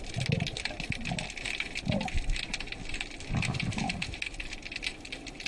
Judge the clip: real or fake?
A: real